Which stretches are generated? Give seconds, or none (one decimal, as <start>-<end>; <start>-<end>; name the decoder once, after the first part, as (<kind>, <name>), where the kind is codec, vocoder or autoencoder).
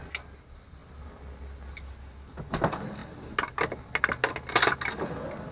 none